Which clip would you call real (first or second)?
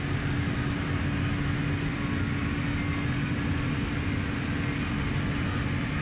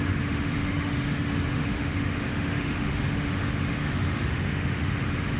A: first